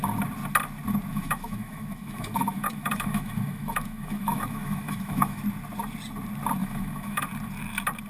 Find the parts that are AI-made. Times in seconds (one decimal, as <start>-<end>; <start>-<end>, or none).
1.1-5.4; 6.6-7.2